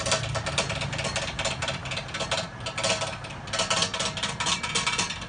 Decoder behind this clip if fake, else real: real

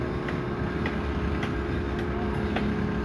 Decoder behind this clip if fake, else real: real